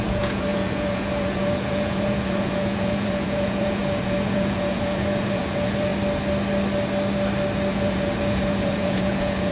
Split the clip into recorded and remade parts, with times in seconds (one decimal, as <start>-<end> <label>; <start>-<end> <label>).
0.0-5.9 remade; 5.9-7.7 recorded; 7.7-9.5 remade